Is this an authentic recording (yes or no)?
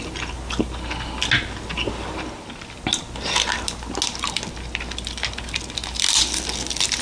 yes